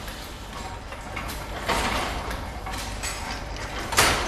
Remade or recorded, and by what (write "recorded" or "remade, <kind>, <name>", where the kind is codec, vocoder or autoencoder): remade, vocoder, BigVGAN v2